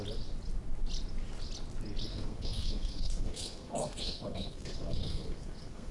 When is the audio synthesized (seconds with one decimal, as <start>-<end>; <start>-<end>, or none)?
2.1-5.9

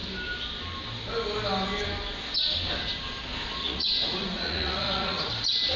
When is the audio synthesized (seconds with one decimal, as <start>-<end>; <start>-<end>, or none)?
3.6-5.3

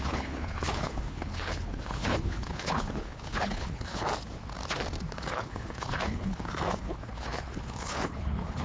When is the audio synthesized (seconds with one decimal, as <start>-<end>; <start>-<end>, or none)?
0.0-4.1; 5.1-8.6

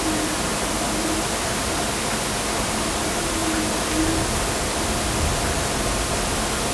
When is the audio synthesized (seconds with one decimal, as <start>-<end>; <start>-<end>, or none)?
none

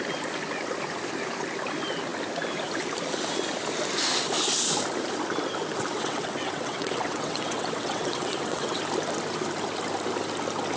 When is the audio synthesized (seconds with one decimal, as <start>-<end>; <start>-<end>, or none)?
5.9-8.8

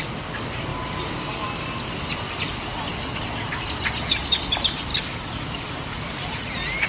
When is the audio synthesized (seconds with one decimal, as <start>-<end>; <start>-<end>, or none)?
0.7-2.2; 4.9-6.4

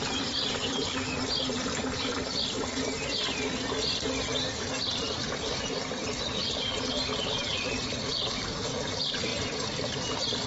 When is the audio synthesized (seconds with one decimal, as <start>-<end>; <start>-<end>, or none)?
0.0-3.2; 4.6-10.5